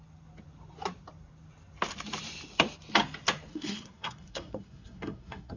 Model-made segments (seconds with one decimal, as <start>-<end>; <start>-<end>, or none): 3.5-5.6